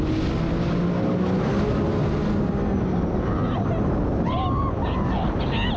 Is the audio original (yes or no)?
yes